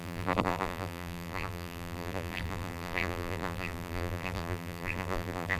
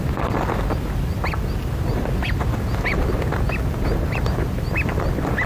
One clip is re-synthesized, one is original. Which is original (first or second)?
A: second